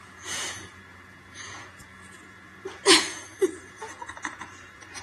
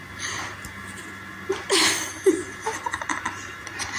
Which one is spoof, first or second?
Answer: first